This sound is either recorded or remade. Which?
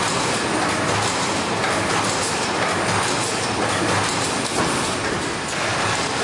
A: recorded